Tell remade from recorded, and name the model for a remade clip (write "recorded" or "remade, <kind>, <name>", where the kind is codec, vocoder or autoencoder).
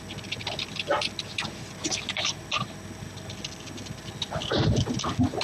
recorded